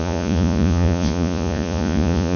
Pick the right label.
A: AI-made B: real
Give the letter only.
A